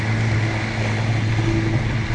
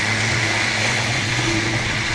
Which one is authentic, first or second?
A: first